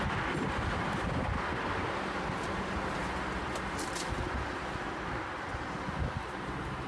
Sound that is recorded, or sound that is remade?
recorded